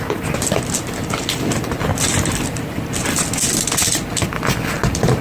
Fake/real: real